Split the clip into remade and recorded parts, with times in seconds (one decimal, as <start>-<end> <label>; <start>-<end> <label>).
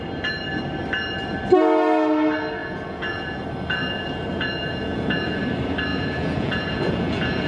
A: 0.0-2.6 recorded; 2.6-3.4 remade; 3.4-3.8 recorded; 3.8-5.4 remade; 5.4-5.9 recorded; 5.9-7.5 remade